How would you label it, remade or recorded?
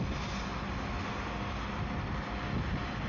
recorded